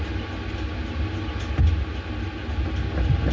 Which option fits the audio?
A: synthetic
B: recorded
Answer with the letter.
B